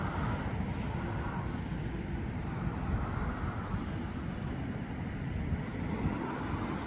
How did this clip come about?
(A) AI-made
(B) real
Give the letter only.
B